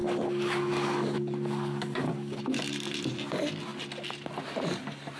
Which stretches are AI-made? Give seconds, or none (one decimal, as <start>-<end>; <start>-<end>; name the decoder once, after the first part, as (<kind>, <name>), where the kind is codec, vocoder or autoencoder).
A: 0.0-2.4 (codec, DAC)